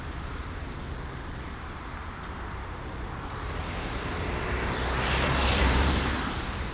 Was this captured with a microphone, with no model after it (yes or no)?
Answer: no